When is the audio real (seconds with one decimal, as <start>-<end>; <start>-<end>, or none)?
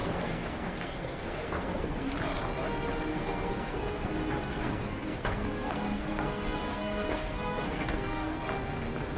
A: 2.1-3.1; 4.1-4.5; 8.4-9.2